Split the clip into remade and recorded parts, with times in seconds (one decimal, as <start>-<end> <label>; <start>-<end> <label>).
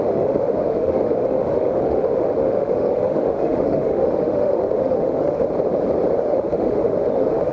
0.0-5.4 remade; 5.4-6.2 recorded; 6.2-7.5 remade